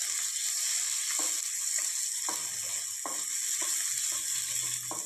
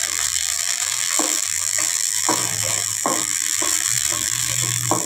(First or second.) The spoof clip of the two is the second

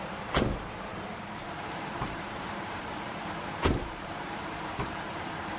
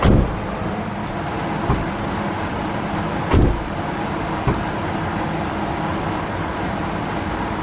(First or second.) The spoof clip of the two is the first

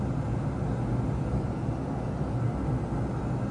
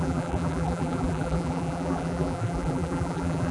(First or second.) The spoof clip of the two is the second